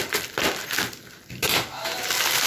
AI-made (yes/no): no